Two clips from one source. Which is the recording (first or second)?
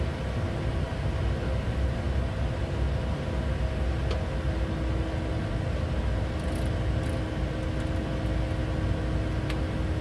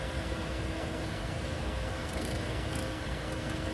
first